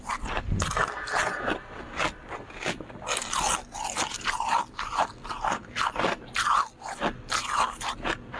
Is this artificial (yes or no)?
no